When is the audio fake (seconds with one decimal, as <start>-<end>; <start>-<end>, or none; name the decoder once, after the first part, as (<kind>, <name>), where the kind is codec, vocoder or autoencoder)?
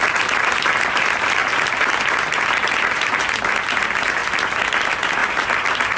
none